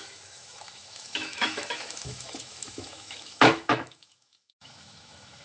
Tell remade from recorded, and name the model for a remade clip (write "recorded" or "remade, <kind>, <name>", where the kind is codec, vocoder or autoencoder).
remade, autoencoder, DAC-VAE